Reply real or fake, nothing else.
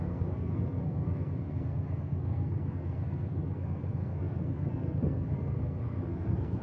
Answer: fake